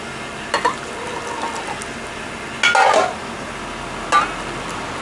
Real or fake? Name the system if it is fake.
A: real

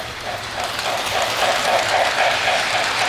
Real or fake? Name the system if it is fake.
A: fake, vocoder, BigVGAN v2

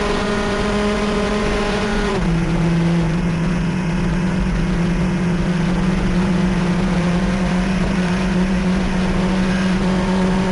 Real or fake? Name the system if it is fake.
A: fake, vocoder, Vocos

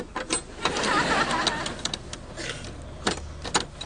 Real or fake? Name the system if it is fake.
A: real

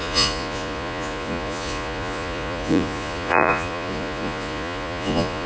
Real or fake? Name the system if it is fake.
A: fake, vocoder, Vocos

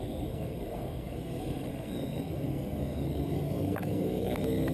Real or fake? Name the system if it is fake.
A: fake, codec, SNAC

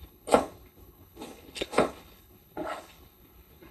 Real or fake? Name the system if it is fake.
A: fake, codec, HILCodec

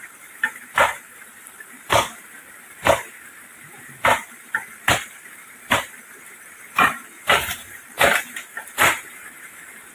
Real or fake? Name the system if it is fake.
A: fake, vocoder, BigVGAN v2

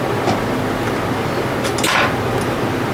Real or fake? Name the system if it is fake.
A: real